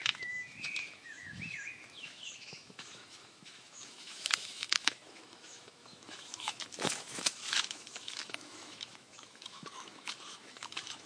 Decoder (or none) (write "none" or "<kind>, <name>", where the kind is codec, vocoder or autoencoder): autoencoder, DAC-VAE